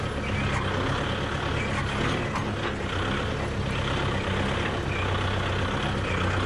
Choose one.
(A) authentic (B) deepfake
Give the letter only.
A